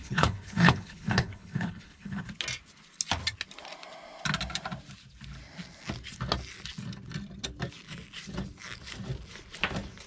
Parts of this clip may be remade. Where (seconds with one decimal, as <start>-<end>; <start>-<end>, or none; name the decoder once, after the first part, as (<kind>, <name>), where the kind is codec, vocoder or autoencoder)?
0.0-2.2 (codec, HILCodec)